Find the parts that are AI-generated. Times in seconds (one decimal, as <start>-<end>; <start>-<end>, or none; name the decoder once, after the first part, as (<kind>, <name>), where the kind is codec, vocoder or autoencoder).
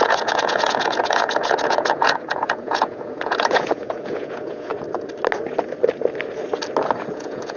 0.0-4.7 (vocoder, Vocos); 7.1-7.6